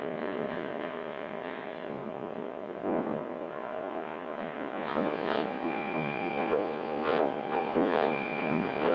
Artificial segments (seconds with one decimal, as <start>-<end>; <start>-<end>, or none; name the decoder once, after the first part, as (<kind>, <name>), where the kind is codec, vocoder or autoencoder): 0.0-8.9 (vocoder, Vocos)